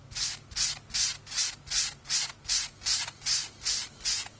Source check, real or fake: real